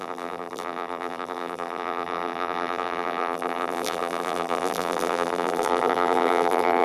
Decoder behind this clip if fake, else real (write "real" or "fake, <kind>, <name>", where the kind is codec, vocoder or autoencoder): fake, vocoder, BigVGAN v2